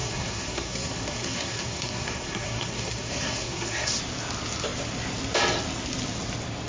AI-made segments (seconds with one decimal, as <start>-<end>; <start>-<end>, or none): 0.0-4.0